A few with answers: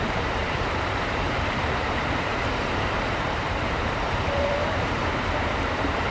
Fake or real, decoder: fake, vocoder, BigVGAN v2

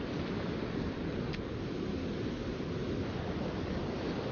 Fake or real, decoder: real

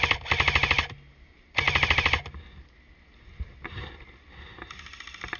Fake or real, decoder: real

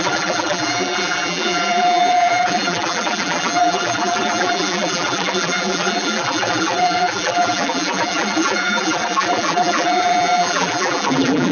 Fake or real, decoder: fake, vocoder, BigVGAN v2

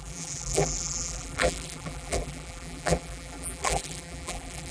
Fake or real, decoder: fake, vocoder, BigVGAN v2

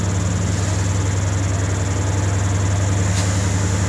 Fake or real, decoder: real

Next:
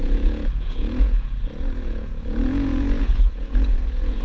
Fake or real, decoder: fake, vocoder, Vocos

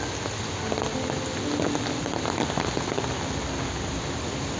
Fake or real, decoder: real